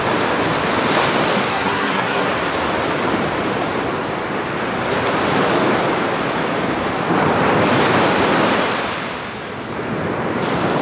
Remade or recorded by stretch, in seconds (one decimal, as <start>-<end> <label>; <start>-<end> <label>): 0.0-1.5 recorded; 1.5-2.3 remade; 2.3-10.8 recorded